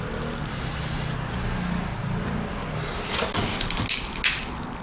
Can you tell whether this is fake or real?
real